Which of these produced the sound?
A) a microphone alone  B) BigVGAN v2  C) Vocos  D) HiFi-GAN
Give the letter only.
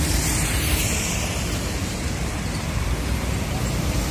B